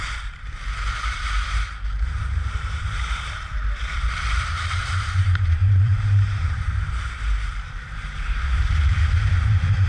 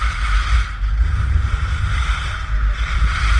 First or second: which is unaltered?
second